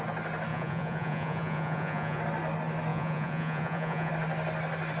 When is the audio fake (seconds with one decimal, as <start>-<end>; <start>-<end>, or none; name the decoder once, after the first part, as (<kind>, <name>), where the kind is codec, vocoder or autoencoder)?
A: 0.5-2.2 (vocoder, Vocos); 2.9-4.1